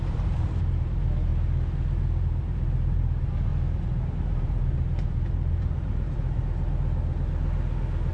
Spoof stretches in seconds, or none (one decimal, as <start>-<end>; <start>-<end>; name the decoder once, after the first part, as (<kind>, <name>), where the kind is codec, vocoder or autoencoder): 0.0-1.3 (vocoder, BigVGAN v2); 2.2-3.5; 4.1-6.4